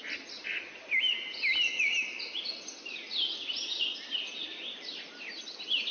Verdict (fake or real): real